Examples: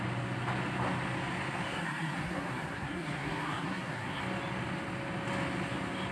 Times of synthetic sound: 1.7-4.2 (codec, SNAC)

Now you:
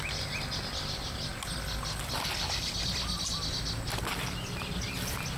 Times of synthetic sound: none

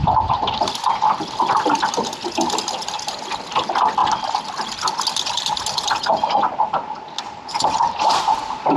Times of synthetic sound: none